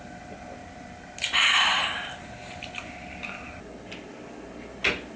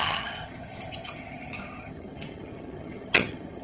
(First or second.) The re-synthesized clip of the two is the second